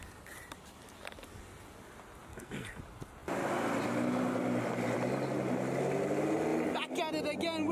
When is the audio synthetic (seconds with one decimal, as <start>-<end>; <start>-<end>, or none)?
2.3-2.8